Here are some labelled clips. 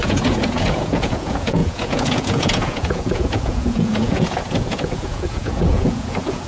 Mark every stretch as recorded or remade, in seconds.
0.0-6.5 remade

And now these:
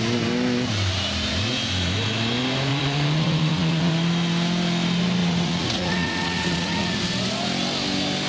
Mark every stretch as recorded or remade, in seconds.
0.0-2.7 recorded; 2.7-3.9 remade; 3.9-5.2 recorded; 5.2-7.0 remade; 7.0-8.3 recorded

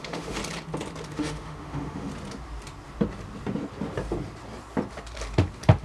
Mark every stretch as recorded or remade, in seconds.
0.0-0.4 remade; 0.4-1.1 recorded; 1.1-2.1 remade; 2.1-5.8 recorded

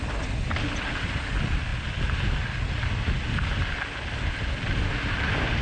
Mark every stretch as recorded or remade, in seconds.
0.0-5.6 recorded